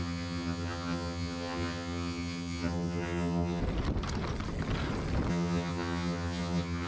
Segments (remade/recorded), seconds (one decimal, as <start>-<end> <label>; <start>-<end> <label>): 0.0-3.6 remade; 3.6-5.3 recorded; 5.3-6.9 remade